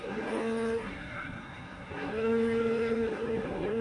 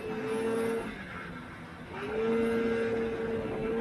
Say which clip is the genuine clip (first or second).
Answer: second